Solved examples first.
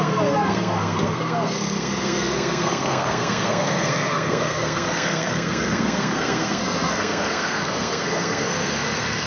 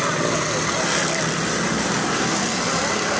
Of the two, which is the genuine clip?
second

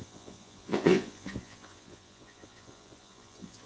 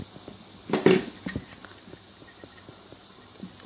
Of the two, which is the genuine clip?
second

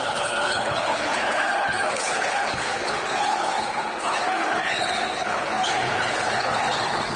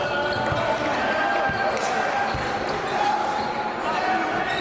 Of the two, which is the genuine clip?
second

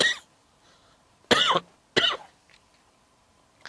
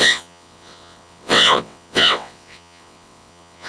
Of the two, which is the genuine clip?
first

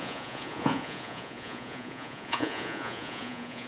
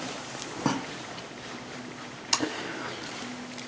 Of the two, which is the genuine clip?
second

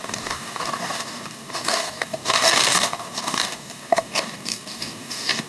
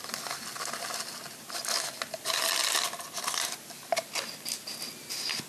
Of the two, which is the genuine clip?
second